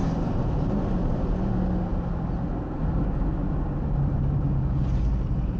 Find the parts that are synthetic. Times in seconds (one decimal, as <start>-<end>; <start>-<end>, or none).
none